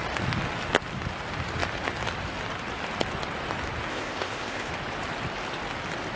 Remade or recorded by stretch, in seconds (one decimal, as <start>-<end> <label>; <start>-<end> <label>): 0.0-3.9 recorded; 3.9-4.7 remade; 4.7-6.2 recorded